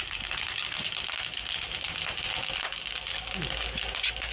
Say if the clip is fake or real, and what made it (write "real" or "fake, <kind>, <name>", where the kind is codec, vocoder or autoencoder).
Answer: real